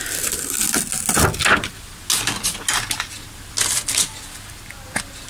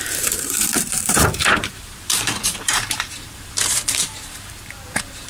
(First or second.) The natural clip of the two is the first